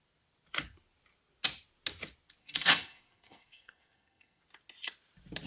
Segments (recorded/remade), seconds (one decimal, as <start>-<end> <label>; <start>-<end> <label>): 0.0-2.4 recorded; 2.4-4.4 remade; 4.4-5.5 recorded